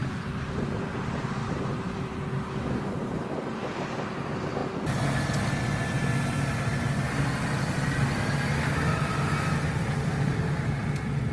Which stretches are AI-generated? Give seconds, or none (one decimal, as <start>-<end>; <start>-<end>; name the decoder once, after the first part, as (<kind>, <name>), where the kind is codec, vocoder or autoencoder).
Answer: 0.0-0.5 (vocoder, BigVGAN v2); 0.9-2.3; 10.3-10.8